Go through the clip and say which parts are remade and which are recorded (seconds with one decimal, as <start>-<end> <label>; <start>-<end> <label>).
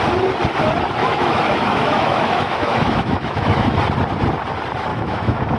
0.0-1.0 recorded; 1.0-3.7 remade; 3.7-4.9 recorded; 4.9-5.6 remade